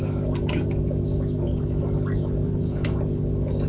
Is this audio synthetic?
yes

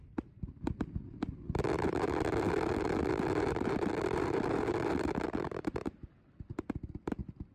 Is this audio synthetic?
yes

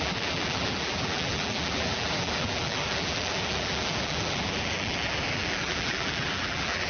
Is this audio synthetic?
yes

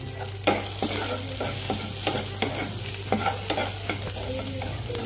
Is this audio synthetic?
no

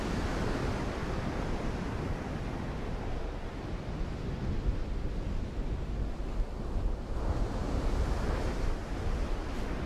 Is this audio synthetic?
no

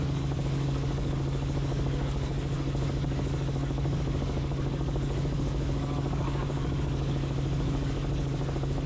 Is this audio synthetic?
yes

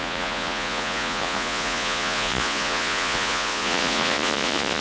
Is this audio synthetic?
yes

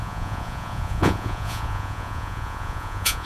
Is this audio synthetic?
yes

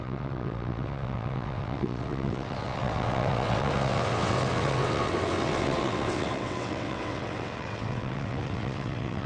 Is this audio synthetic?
yes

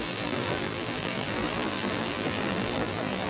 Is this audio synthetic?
yes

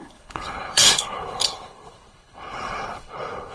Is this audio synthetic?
yes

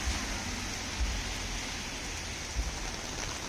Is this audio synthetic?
no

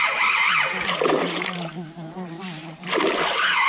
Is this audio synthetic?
yes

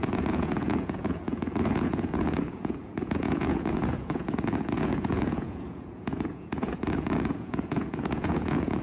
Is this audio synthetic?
yes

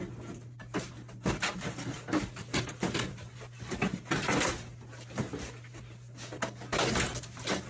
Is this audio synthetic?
no